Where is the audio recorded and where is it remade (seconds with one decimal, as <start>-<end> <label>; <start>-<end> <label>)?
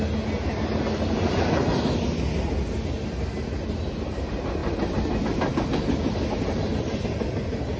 0.0-7.8 recorded